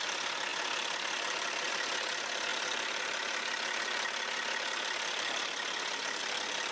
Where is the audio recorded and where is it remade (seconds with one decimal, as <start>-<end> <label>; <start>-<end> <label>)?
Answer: 0.0-6.7 recorded